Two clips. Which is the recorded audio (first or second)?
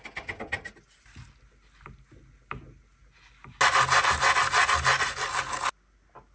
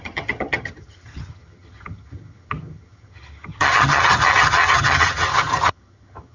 first